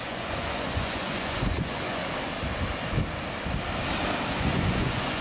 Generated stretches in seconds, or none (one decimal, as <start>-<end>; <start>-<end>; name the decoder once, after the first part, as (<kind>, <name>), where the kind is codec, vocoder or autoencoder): 0.0-2.0 (vocoder, Vocos); 4.3-5.2